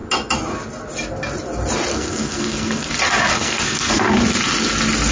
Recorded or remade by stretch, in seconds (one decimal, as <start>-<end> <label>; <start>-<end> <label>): 0.0-1.9 recorded; 1.9-2.9 remade; 2.9-3.3 recorded; 3.3-4.1 remade; 4.1-5.1 recorded

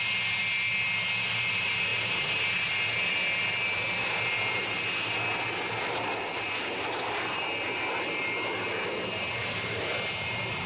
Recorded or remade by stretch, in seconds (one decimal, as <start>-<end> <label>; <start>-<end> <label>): 0.0-1.9 recorded; 1.9-2.7 remade; 2.7-10.7 recorded

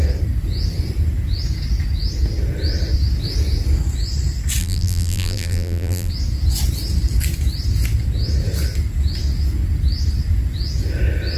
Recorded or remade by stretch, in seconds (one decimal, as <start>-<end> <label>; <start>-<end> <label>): 0.0-4.6 recorded; 4.6-6.1 remade; 6.1-11.4 recorded